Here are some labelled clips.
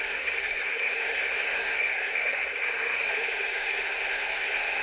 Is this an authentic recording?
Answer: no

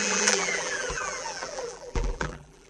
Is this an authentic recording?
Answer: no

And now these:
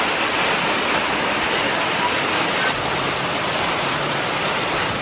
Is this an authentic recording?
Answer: yes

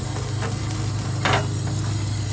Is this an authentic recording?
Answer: yes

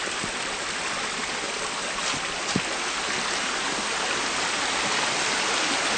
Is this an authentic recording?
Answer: yes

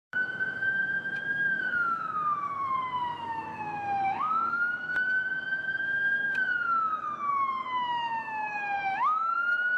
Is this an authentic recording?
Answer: no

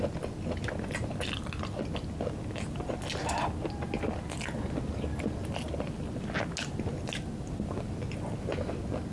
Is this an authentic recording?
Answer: yes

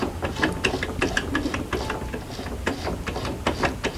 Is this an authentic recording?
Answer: yes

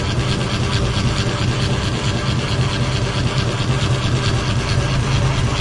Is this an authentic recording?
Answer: yes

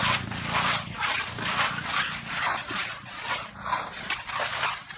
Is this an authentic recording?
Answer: yes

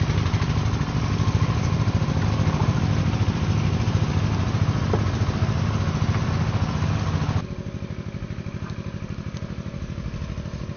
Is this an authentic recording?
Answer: yes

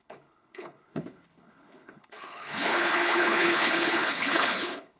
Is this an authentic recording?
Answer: no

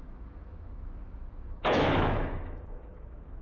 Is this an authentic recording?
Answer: no